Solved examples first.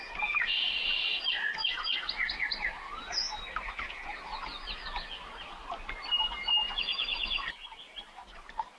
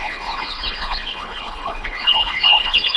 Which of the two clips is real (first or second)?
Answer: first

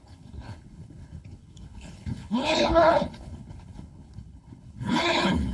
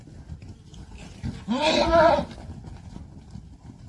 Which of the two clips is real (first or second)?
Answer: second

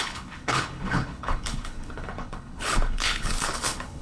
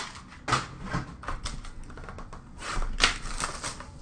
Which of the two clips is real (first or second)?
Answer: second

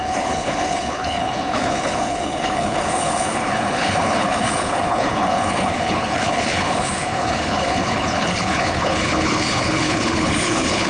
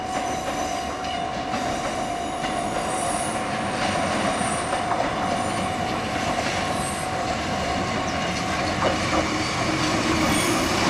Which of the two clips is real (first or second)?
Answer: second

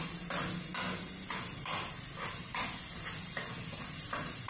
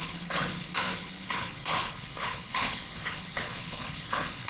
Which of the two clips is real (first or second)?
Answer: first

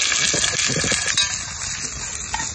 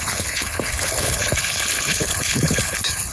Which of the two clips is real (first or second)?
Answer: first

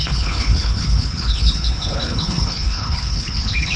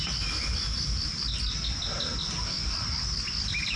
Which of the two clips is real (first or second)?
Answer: second